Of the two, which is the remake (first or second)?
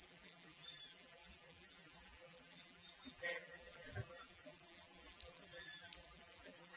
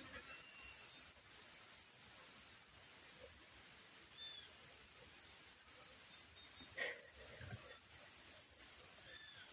first